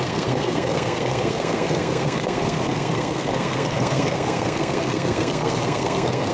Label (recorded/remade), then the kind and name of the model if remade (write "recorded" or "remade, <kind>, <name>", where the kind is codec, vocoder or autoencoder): remade, codec, SNAC